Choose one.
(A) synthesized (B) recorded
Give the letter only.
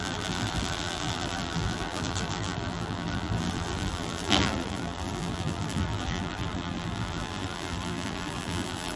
A